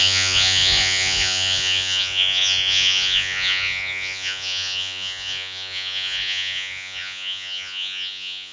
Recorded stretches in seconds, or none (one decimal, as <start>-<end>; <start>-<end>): none